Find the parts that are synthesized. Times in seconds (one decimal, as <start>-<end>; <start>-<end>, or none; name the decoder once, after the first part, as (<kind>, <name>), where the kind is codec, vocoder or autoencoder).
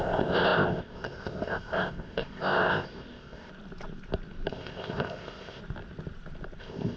0.0-3.5 (codec, ZipCodec); 4.5-5.6; 6.6-7.0